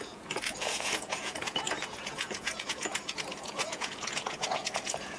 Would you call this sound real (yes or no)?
no